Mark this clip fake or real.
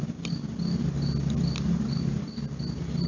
real